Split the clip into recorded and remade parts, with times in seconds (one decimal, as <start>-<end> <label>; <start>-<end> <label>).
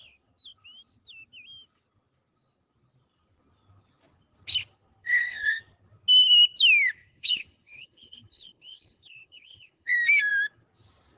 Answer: 0.0-5.0 recorded; 5.0-5.6 remade; 5.6-7.0 recorded; 7.0-9.9 remade; 9.9-11.2 recorded